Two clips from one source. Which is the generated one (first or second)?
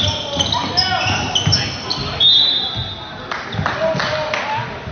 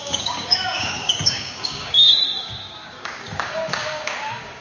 second